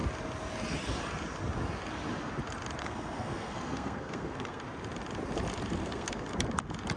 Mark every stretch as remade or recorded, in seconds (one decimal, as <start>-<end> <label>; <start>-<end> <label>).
0.0-2.8 recorded; 2.8-4.6 remade; 4.6-5.8 recorded; 5.8-6.3 remade; 6.3-7.0 recorded